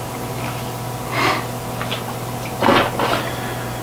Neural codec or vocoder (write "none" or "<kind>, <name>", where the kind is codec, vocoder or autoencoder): none